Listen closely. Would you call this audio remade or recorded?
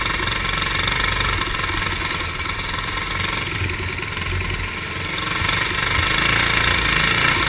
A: recorded